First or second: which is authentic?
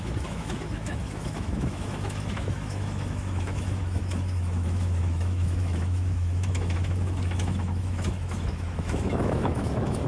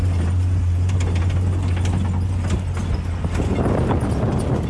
second